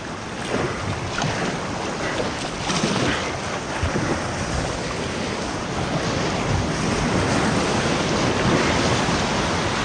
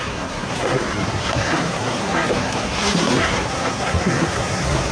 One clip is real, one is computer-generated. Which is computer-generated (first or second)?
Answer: second